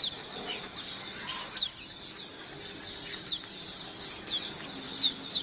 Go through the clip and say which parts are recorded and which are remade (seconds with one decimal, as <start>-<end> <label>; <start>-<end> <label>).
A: 0.0-5.4 recorded